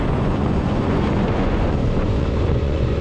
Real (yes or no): no